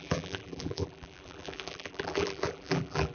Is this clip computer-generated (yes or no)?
yes